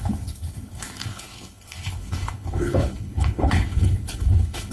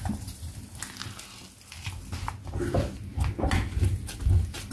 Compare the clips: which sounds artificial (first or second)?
first